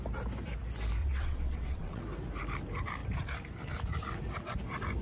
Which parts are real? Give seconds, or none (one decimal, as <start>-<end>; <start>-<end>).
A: 0.0-1.0; 2.0-5.0